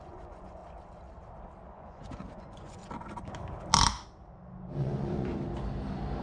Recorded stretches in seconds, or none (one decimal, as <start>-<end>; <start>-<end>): 0.6-1.7; 2.8-4.8; 5.3-6.2